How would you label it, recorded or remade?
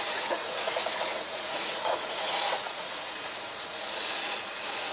remade